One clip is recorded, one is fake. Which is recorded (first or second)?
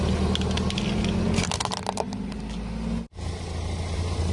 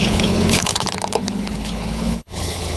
first